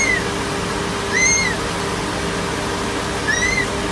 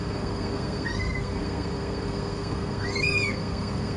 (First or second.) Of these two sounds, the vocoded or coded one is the second